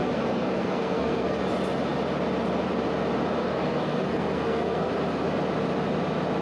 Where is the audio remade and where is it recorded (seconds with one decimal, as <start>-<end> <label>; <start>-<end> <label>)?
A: 0.0-1.4 remade; 1.4-3.4 recorded; 3.4-4.9 remade; 4.9-6.4 recorded